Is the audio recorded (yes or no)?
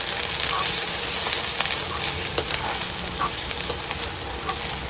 yes